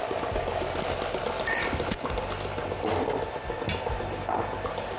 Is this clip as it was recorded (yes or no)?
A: yes